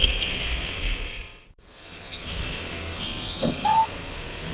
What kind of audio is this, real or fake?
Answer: fake